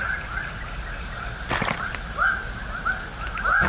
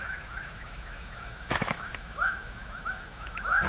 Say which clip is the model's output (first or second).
second